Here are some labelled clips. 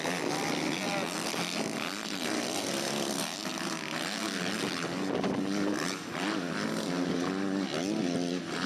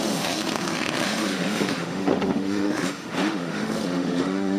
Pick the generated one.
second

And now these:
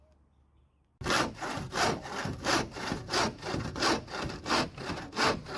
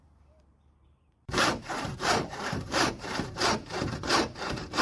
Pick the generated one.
second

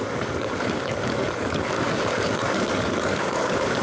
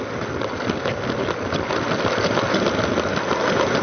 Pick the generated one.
first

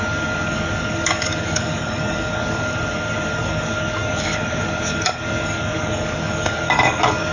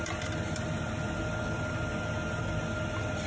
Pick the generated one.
first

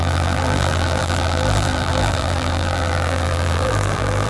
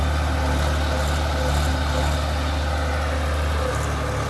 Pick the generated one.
first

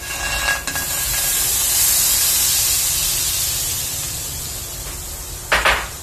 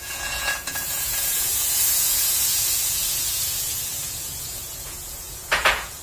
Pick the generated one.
second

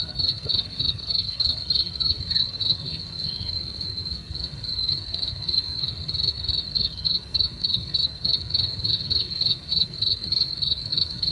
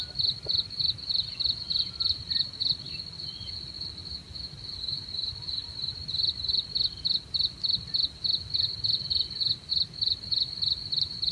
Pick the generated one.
first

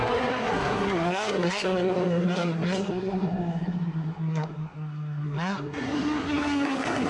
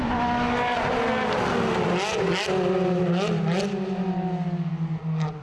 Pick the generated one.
first